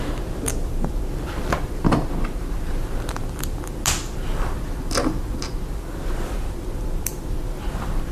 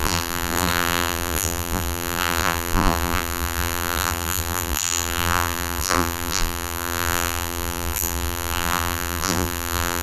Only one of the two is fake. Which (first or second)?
second